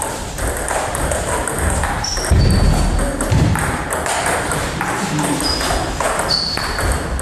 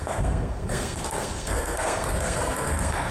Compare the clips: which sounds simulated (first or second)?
second